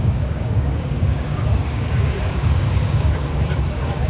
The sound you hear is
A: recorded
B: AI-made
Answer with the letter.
B